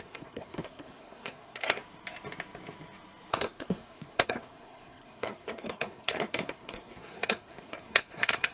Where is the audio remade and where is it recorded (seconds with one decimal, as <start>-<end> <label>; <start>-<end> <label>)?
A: 0.0-1.8 remade; 1.8-3.3 recorded; 3.3-8.5 remade